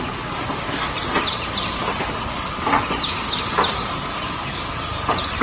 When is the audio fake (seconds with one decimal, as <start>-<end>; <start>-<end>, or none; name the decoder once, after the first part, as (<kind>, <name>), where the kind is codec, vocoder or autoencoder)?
none